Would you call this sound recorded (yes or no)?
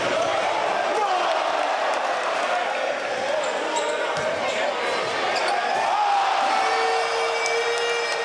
yes